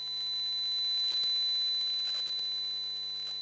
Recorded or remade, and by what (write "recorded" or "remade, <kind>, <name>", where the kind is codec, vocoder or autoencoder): recorded